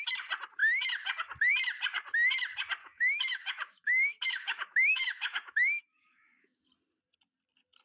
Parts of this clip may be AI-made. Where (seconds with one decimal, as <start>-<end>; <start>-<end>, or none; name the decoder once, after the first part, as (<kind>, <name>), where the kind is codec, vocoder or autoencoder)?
2.8-6.6 (autoencoder, DAC-VAE)